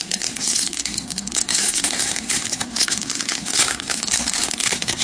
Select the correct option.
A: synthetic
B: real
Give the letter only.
A